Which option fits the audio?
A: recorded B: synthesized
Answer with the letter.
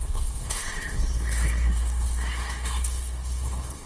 B